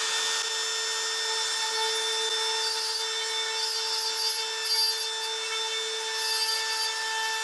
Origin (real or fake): real